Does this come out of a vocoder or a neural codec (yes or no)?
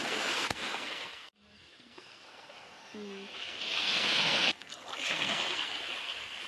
yes